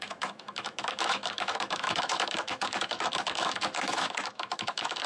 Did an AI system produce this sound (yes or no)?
yes